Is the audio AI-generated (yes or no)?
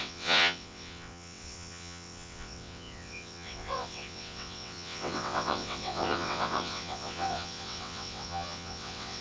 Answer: yes